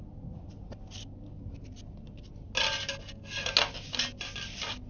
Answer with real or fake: real